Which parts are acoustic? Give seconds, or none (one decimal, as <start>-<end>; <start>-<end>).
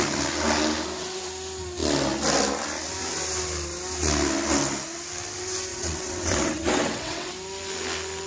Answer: 0.0-5.7; 7.3-8.3